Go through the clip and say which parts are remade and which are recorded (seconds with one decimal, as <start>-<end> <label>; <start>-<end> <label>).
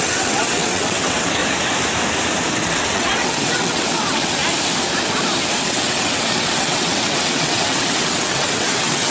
0.0-1.4 remade; 1.4-2.5 recorded; 2.5-4.4 remade; 4.4-5.5 recorded; 5.5-9.1 remade